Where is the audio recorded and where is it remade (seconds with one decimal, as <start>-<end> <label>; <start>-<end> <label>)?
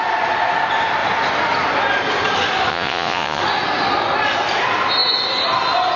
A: 0.0-2.7 recorded; 2.7-3.4 remade; 3.4-6.0 recorded